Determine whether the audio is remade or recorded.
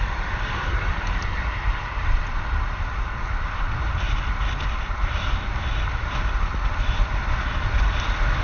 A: remade